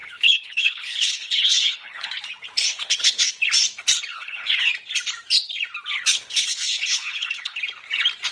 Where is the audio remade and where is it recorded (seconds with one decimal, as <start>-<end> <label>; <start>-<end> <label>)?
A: 0.0-2.1 remade; 2.1-2.6 recorded; 2.6-3.3 remade; 3.3-4.1 recorded; 4.1-4.7 remade; 4.7-6.1 recorded; 6.1-7.6 remade; 7.6-8.3 recorded